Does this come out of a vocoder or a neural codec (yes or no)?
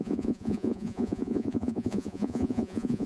yes